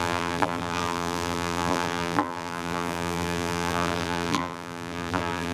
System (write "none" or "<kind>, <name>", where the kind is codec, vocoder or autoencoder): vocoder, BigVGAN v2